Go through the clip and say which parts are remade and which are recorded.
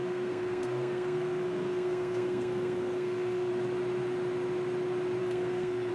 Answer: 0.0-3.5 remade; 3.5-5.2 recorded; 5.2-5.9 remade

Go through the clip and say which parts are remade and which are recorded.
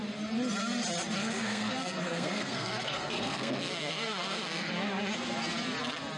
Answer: 0.0-1.2 recorded; 1.2-4.7 remade; 4.7-6.2 recorded